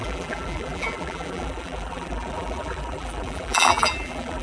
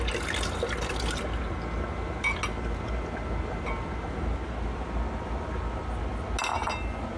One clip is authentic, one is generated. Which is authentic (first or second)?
second